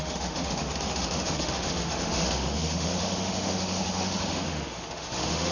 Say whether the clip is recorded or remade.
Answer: remade